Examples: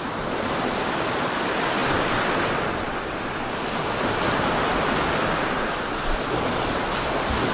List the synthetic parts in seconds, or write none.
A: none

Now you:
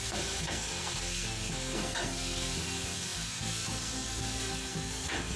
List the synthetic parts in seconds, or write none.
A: 0.0-5.4 (codec, SNAC)

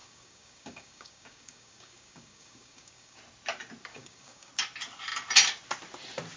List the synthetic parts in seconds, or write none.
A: 0.0-3.2 (codec, DAC); 3.9-4.5

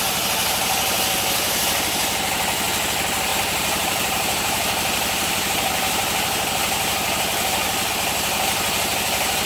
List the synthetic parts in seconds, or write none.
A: 3.3-7.9 (vocoder, BigVGAN v2)

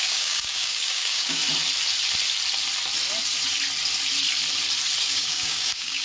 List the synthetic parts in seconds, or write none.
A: 0.0-1.4 (codec, DAC); 5.0-6.0

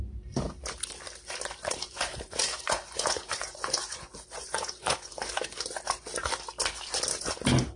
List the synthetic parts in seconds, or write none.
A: 1.8-5.3 (vocoder, Vocos)

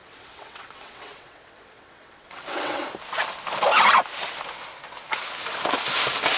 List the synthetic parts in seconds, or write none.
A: 0.0-2.8 (vocoder, WaveNeXt)

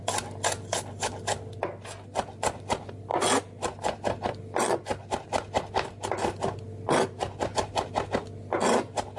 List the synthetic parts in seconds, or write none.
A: none